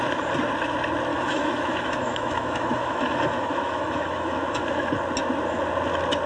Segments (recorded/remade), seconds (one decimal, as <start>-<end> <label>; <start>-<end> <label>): 0.0-1.1 recorded; 1.1-4.9 remade; 4.9-6.3 recorded